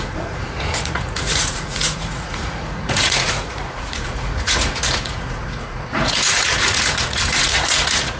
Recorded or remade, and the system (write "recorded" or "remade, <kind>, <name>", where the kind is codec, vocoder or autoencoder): remade, vocoder, Vocos